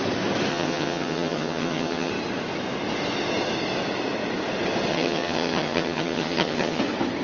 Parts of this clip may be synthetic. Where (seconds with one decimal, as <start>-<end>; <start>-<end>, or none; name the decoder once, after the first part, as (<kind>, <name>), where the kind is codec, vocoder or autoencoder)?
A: 0.5-2.1 (vocoder, HiFi-GAN); 4.9-6.8